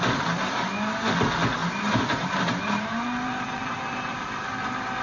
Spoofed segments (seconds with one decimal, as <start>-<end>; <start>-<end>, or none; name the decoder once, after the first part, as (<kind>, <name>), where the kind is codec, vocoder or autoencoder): 1.6-4.6 (vocoder, BigVGAN v2)